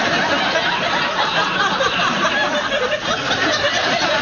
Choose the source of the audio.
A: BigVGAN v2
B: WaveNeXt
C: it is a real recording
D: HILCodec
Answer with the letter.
C